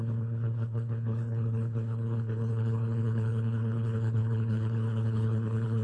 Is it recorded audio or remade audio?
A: remade